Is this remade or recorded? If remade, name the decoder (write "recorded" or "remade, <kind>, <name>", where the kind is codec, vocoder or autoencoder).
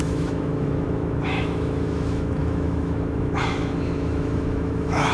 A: remade, autoencoder, DAC-VAE